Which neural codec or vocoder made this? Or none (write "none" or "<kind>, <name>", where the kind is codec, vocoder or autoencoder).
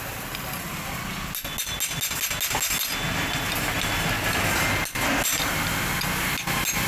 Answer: none